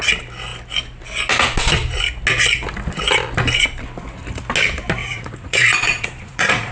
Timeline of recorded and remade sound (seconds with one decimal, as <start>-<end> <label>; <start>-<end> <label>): 0.0-5.0 recorded; 5.0-6.7 remade